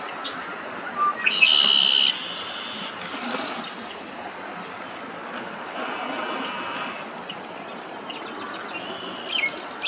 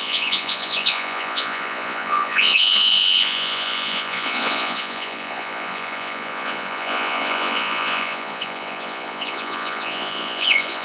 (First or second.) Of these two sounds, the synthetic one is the second